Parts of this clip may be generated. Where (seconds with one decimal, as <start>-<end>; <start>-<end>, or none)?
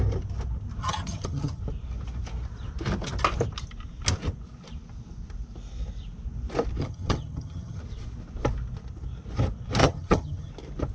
0.8-1.6; 6.8-7.8; 9.8-10.5